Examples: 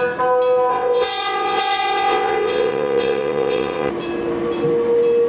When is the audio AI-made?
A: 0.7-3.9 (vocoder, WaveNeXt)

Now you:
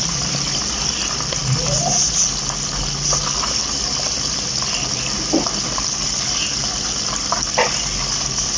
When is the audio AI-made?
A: none

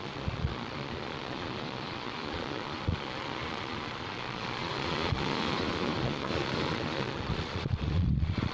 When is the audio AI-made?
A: 0.0-8.5 (vocoder, Vocos)

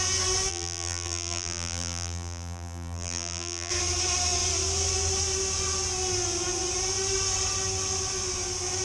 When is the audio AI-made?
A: 0.5-3.7 (vocoder, BigVGAN v2)